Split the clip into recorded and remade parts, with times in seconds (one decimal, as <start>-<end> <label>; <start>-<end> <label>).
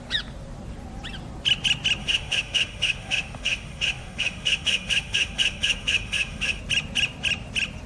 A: 0.0-2.0 recorded; 2.0-6.6 remade; 6.6-7.9 recorded